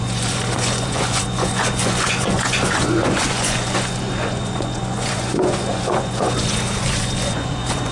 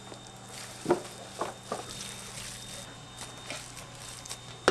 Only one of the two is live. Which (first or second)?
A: second